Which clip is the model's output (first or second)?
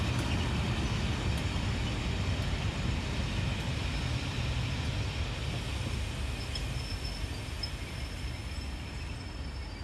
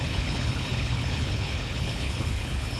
second